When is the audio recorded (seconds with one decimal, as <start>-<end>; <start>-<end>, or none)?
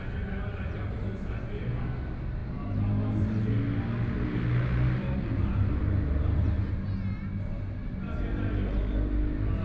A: 0.0-9.6